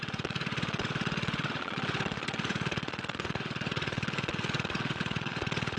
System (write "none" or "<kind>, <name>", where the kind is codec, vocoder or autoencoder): vocoder, WaveNeXt